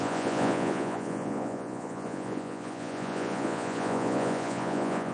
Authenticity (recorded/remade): remade